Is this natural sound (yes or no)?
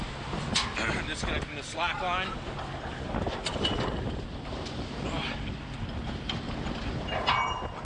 yes